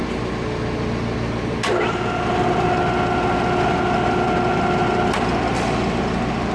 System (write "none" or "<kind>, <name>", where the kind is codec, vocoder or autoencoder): none